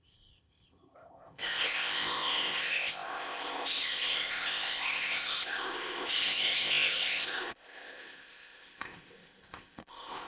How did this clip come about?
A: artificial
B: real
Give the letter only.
A